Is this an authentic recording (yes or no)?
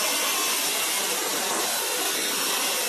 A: yes